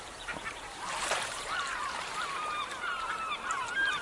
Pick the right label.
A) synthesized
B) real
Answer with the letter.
A